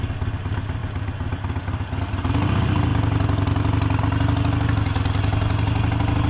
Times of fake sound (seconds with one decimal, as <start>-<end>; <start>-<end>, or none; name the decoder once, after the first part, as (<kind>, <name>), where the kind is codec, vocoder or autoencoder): none